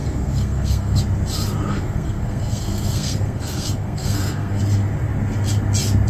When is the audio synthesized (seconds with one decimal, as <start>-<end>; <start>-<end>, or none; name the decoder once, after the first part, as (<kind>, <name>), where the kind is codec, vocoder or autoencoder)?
0.0-1.0 (codec, SNAC); 1.7-4.6